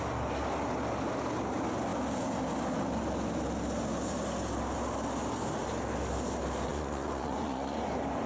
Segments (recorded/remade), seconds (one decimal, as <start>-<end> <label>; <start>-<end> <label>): 0.0-6.7 recorded; 6.7-7.9 remade; 7.9-8.3 recorded